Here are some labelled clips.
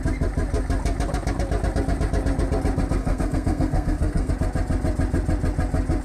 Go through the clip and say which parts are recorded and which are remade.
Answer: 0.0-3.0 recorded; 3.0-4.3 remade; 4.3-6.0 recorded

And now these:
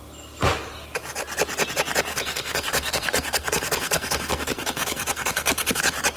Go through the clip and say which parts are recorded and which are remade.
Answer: 0.0-2.1 recorded; 2.1-5.8 remade; 5.8-6.2 recorded